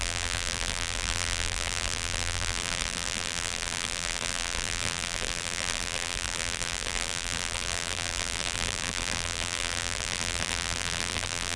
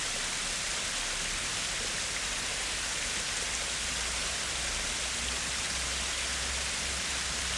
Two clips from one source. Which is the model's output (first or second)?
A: first